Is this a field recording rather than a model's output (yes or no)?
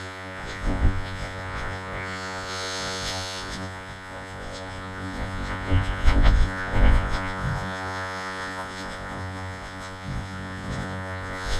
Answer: no